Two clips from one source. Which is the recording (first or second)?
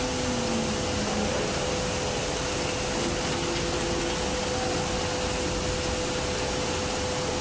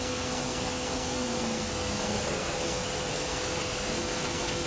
first